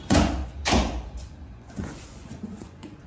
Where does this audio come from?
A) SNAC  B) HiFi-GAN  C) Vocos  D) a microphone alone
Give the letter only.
C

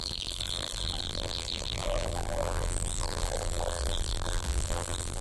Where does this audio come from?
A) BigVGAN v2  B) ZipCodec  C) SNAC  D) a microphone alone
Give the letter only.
A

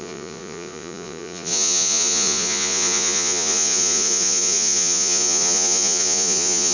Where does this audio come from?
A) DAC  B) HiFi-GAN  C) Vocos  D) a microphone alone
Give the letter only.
C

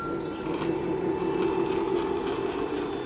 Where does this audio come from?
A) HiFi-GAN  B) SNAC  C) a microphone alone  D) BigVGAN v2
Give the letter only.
C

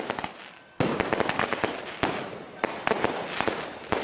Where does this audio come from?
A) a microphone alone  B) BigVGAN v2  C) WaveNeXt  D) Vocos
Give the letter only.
A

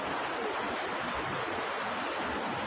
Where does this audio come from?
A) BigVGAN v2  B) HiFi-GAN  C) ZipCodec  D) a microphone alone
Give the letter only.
D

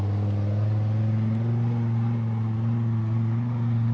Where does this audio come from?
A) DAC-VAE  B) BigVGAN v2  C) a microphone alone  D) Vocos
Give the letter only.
C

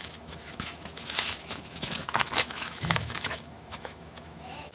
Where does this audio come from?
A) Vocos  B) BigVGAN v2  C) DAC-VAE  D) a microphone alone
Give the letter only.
C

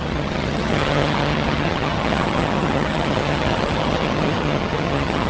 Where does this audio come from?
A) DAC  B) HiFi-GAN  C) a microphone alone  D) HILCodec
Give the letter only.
B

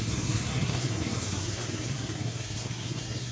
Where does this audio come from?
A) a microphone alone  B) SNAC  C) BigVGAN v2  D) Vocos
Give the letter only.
B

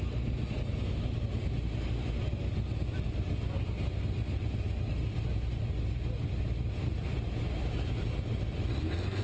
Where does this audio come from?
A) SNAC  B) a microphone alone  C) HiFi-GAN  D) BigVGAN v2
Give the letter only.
B